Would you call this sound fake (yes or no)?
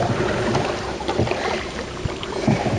no